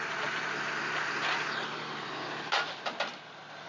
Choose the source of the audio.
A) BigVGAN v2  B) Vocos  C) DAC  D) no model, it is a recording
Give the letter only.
D